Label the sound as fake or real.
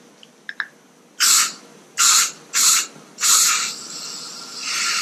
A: real